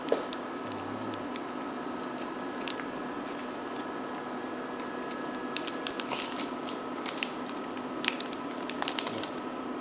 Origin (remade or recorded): recorded